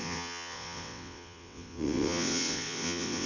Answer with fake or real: fake